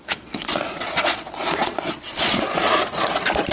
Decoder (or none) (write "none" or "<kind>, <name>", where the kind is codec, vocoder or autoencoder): vocoder, Vocos